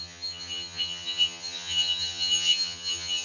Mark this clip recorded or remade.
remade